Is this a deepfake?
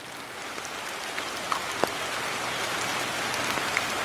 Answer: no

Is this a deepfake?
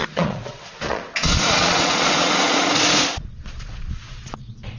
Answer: yes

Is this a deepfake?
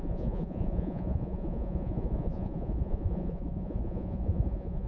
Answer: yes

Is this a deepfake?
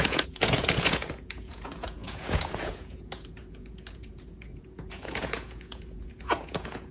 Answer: yes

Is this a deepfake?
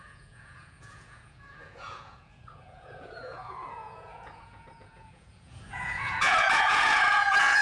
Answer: yes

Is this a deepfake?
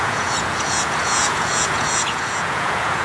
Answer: yes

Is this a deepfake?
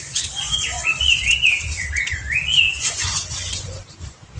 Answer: yes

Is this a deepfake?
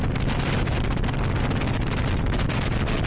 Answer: no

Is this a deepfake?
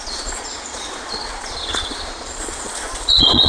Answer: yes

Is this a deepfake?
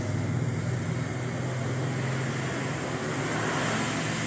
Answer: no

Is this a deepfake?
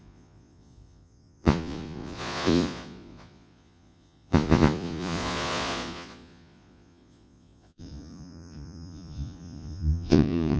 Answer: yes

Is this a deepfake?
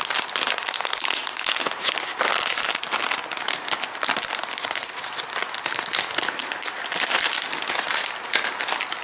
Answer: no